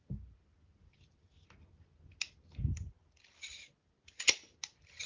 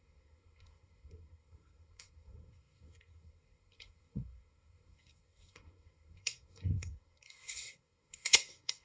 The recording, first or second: first